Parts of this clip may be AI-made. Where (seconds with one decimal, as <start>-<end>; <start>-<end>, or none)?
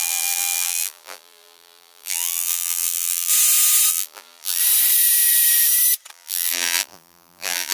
0.0-3.3; 3.9-4.6; 6.1-7.7